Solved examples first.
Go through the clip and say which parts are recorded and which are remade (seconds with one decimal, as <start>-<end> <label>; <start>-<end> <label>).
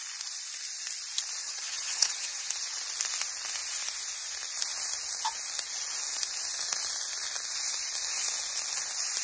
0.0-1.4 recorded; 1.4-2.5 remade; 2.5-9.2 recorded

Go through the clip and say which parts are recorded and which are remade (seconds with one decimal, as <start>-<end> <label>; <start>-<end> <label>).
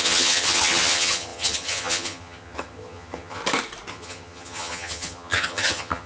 0.0-3.4 remade; 3.4-3.9 recorded; 3.9-6.1 remade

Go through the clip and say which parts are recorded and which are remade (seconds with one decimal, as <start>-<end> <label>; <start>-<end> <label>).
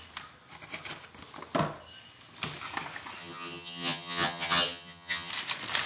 0.0-3.2 recorded; 3.2-5.3 remade; 5.3-5.9 recorded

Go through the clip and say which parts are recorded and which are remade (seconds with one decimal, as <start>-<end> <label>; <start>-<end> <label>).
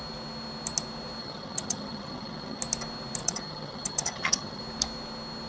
0.0-1.2 recorded; 1.2-2.6 remade; 2.6-3.2 recorded; 3.2-4.6 remade; 4.6-5.5 recorded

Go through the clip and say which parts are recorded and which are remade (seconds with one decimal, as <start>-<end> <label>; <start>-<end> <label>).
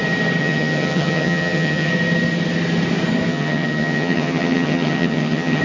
0.0-0.4 recorded; 0.4-1.9 remade; 1.9-3.3 recorded; 3.3-5.6 remade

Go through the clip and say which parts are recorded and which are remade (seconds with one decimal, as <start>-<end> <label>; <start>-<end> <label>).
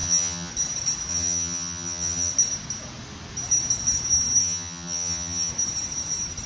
0.0-0.5 remade; 0.5-1.1 recorded; 1.1-2.3 remade; 2.3-4.4 recorded; 4.4-5.5 remade; 5.5-6.5 recorded